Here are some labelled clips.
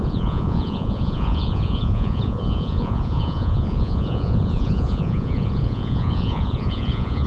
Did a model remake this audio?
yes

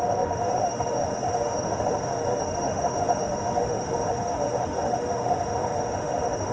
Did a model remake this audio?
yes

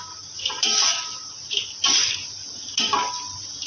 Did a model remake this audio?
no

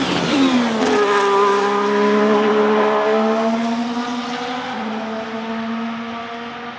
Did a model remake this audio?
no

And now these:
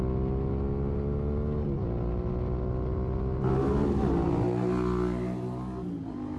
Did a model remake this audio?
no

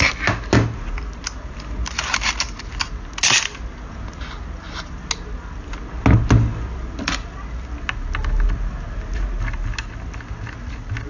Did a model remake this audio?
no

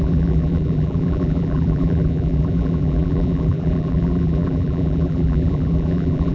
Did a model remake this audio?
yes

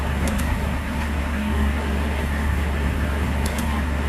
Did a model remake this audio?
yes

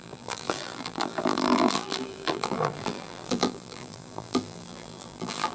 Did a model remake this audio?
yes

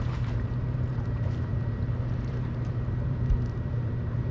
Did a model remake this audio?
yes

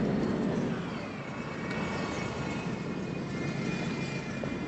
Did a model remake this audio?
no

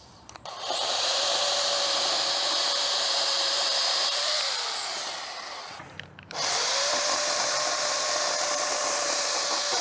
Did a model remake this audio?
yes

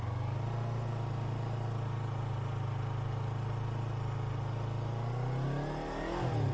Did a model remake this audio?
no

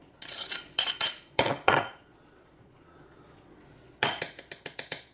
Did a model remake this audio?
yes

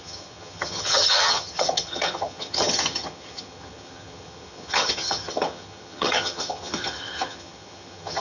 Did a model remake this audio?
yes